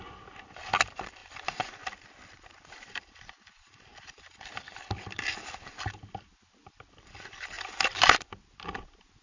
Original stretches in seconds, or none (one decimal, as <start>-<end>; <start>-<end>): 0.0-9.2